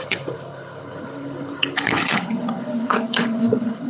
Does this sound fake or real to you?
fake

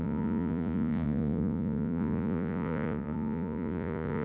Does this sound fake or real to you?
fake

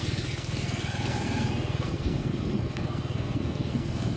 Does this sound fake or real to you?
fake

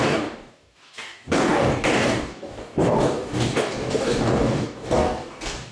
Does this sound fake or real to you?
fake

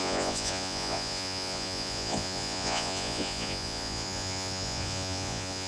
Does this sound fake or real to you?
fake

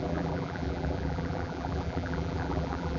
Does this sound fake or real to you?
fake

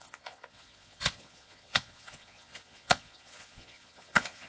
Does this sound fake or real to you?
fake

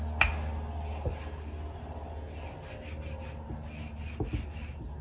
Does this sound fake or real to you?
real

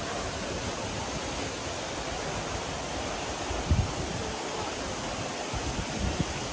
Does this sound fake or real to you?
real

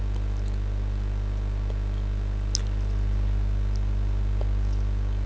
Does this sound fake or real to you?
real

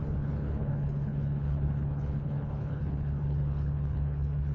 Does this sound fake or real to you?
fake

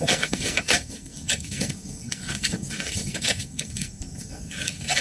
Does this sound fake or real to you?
fake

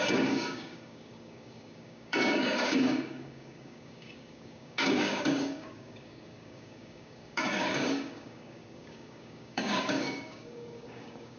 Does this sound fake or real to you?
fake